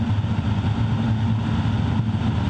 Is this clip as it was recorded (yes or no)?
yes